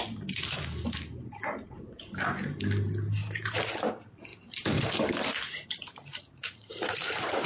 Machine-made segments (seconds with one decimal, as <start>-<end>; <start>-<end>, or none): 4.3-7.5